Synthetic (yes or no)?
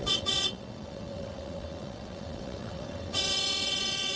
yes